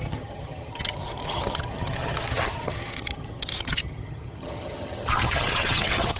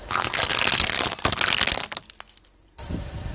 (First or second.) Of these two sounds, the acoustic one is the second